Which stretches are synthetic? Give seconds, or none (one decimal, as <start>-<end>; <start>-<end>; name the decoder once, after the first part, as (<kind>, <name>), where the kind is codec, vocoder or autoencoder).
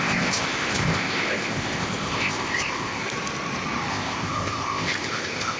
0.0-3.0 (codec, ZipCodec); 3.9-5.6